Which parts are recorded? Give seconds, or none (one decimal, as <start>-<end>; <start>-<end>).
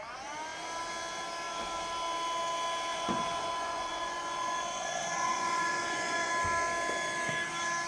0.0-2.9; 6.3-7.9